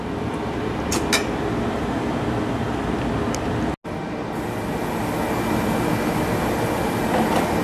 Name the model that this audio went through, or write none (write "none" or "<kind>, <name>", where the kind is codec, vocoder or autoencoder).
none